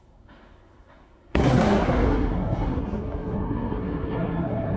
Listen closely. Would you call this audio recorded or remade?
remade